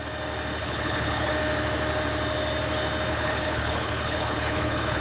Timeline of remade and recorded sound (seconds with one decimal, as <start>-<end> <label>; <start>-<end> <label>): 0.0-0.6 recorded; 0.6-1.3 remade; 1.3-3.1 recorded; 3.1-5.0 remade